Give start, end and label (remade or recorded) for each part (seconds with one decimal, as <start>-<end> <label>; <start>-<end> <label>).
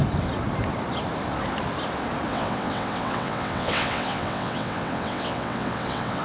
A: 0.0-2.3 recorded; 2.3-6.2 remade